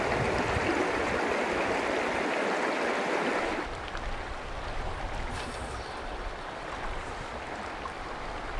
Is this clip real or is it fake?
real